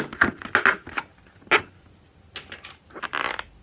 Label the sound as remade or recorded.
recorded